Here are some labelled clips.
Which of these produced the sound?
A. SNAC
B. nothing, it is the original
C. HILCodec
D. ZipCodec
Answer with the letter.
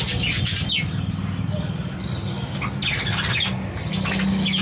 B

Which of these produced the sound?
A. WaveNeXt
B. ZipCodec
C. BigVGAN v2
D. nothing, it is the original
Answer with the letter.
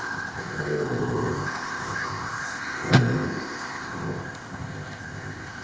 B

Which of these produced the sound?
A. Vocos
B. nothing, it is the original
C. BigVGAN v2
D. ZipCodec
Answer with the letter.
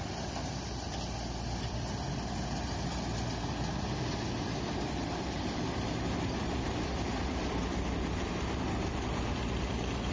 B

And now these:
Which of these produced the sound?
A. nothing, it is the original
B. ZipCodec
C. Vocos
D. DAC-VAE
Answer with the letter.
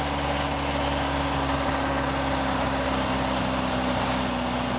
A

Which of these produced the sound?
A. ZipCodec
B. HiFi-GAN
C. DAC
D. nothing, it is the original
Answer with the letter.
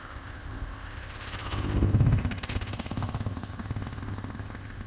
A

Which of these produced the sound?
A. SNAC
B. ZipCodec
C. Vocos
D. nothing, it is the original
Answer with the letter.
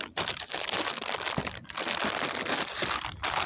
D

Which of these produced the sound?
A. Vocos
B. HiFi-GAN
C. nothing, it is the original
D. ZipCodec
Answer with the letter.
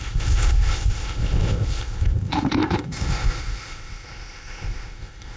D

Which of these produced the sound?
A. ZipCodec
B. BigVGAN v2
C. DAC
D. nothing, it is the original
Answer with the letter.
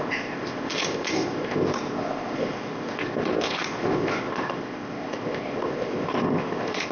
A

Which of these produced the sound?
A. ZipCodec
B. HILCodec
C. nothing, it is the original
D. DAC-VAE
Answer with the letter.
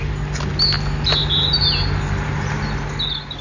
C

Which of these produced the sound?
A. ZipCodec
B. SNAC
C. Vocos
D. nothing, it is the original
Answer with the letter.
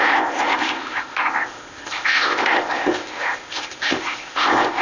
A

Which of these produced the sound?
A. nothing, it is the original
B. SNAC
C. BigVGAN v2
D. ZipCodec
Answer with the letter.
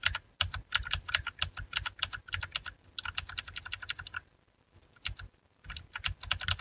A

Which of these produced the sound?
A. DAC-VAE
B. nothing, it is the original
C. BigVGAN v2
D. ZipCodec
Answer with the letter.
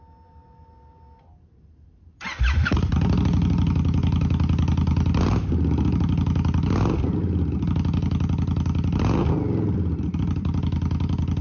B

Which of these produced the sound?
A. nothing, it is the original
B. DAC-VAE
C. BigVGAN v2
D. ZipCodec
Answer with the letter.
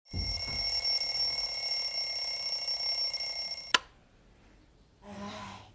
A